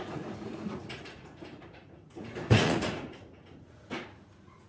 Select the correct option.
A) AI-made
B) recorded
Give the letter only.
A